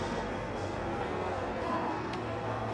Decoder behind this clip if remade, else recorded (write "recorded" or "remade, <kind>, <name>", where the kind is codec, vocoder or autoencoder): remade, codec, SNAC